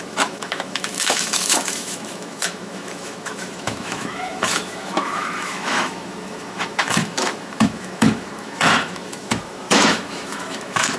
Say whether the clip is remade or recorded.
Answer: remade